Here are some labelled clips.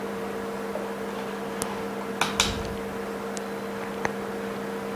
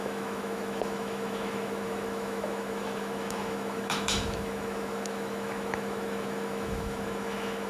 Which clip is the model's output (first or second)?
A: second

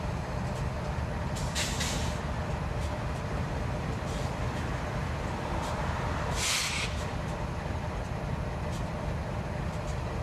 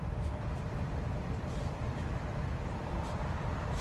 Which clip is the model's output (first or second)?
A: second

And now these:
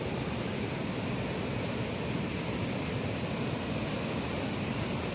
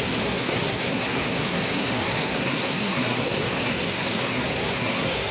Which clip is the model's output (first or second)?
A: second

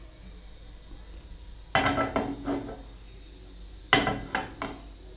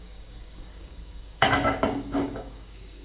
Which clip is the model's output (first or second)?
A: second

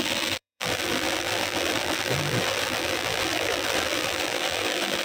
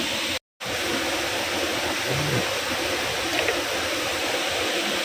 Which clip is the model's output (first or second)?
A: first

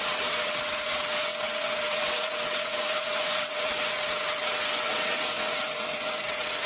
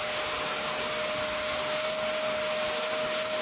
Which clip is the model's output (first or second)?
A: first